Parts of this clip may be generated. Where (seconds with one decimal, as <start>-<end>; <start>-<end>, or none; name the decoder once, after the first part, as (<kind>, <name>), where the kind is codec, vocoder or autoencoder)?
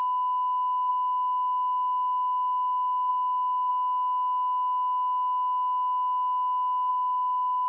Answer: 0.0-3.7 (autoencoder, DAC-VAE); 6.9-7.7